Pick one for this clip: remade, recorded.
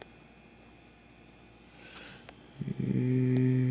recorded